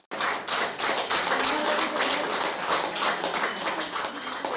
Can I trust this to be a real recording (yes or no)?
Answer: yes